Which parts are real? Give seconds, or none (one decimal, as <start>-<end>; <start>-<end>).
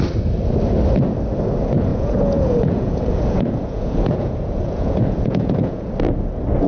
0.0-1.9; 5.9-6.7